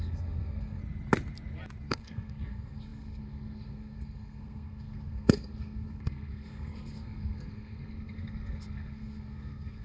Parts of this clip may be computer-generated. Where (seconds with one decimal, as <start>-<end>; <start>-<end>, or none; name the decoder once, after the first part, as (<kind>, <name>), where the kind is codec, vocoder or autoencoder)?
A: 0.0-0.8 (codec, SNAC); 1.9-9.8